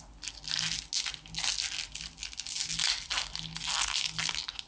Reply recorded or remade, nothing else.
recorded